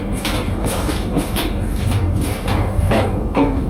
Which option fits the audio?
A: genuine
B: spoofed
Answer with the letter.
B